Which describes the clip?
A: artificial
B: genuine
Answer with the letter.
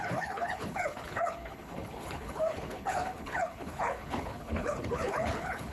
A